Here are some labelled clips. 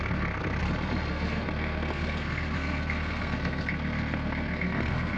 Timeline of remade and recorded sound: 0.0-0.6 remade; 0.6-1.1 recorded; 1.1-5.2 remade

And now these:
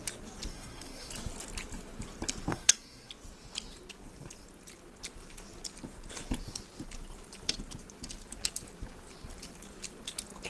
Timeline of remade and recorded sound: 0.0-0.5 recorded; 0.5-1.1 remade; 1.1-2.5 recorded; 2.5-3.1 remade; 3.1-10.5 recorded

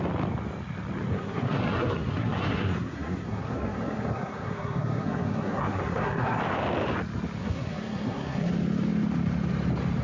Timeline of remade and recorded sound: 0.0-1.1 recorded; 1.1-6.4 remade; 6.4-7.4 recorded; 7.4-8.5 remade; 8.5-10.0 recorded

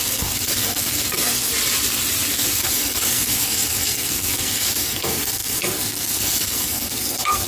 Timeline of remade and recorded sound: 0.0-1.5 remade; 1.5-2.3 recorded; 2.3-7.5 remade

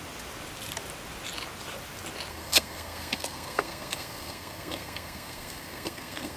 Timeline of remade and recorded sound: 0.0-2.3 recorded; 2.3-6.4 remade